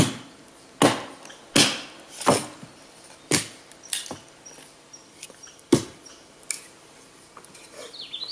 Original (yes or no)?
yes